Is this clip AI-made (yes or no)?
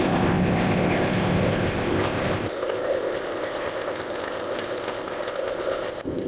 yes